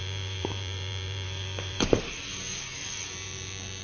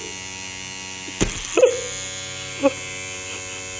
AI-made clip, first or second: first